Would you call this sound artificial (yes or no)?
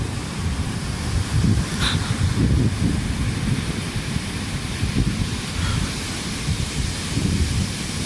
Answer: no